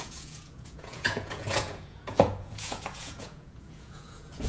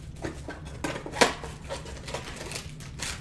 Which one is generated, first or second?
first